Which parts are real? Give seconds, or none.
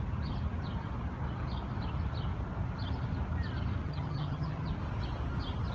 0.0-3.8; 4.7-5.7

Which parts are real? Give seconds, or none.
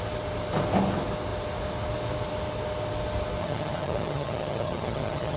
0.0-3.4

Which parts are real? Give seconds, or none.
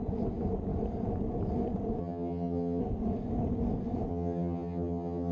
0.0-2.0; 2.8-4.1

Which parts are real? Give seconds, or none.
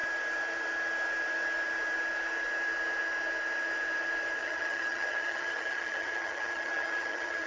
0.0-4.4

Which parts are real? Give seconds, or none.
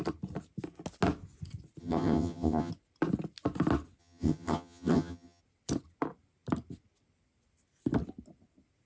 0.0-1.8; 2.7-4.0; 5.4-8.9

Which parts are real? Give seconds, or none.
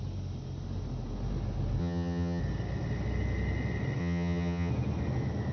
0.0-1.8; 2.4-4.0; 4.7-5.5